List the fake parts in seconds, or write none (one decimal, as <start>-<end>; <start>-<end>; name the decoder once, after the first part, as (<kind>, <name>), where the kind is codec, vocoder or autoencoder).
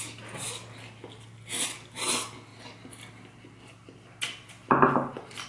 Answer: none